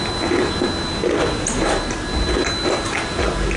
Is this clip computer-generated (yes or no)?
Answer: no